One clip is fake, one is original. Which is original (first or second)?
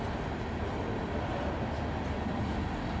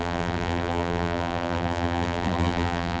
first